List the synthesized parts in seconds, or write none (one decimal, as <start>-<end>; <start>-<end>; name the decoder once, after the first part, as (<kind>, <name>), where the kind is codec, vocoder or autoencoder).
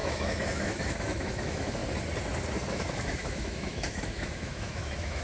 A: 0.0-1.8 (autoencoder, DAC-VAE); 2.7-5.2